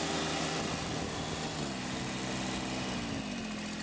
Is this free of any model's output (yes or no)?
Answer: yes